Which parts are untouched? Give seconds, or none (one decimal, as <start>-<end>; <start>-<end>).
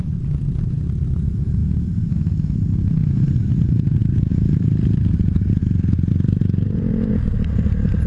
1.6-2.8; 5.6-7.1